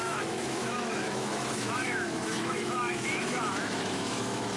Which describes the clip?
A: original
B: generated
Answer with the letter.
B